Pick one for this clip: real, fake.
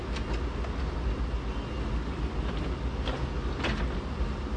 real